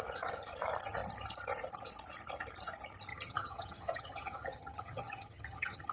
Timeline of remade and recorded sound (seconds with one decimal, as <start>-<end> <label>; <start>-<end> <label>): 0.0-3.1 recorded; 3.1-5.9 remade